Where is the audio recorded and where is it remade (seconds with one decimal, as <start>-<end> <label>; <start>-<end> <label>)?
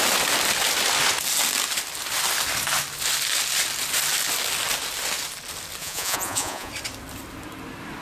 0.0-5.8 recorded; 5.8-6.7 remade; 6.7-8.0 recorded